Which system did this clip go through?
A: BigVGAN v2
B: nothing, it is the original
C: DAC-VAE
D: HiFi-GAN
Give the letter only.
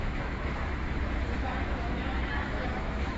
C